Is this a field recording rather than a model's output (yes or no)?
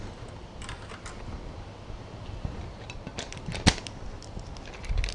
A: yes